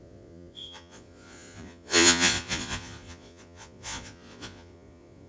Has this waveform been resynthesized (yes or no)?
yes